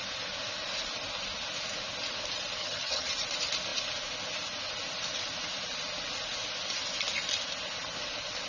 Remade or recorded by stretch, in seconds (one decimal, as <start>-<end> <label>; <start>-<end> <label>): 0.0-2.6 recorded; 2.6-3.1 remade; 3.1-8.5 recorded